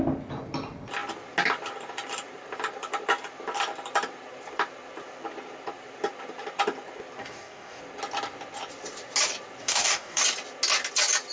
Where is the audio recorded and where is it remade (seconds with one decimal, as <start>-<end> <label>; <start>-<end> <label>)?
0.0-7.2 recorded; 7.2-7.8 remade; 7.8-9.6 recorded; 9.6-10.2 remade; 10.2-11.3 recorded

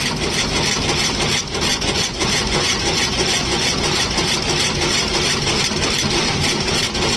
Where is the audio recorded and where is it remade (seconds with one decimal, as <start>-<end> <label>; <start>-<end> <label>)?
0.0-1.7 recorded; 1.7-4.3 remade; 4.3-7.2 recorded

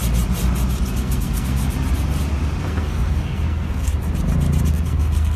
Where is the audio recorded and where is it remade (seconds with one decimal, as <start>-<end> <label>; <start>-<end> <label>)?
0.0-0.9 recorded; 0.9-1.6 remade; 1.6-2.6 recorded; 2.6-3.9 remade; 3.9-4.7 recorded; 4.7-5.4 remade